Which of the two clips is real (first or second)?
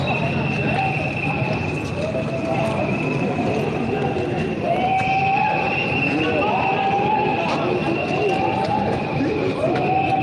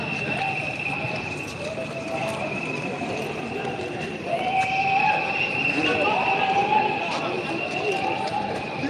first